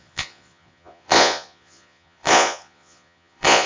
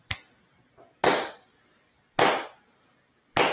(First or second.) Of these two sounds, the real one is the second